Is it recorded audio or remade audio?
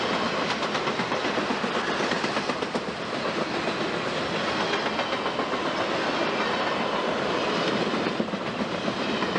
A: recorded